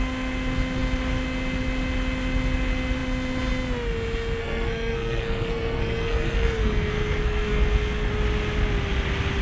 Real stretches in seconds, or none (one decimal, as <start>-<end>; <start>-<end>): 0.0-4.4; 8.1-9.4